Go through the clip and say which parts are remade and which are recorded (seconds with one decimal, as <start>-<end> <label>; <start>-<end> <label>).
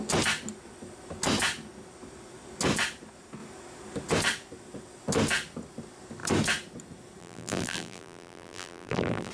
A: 0.0-7.2 recorded; 7.2-9.3 remade